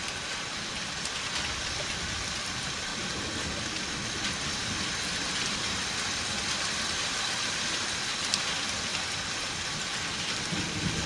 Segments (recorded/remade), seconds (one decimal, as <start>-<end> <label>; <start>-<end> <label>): 0.0-11.1 recorded